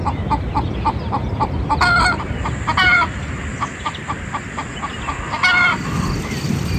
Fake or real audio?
real